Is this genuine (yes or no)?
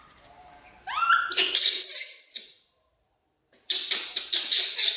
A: no